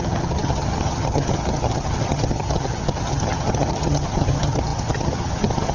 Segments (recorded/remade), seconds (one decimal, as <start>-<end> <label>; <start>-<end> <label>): 0.0-5.7 remade